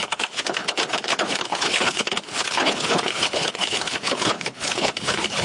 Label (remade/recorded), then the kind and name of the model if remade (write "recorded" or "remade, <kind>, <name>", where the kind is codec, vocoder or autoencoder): remade, codec, HILCodec